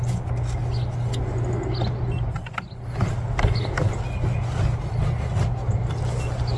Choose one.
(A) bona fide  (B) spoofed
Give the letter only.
A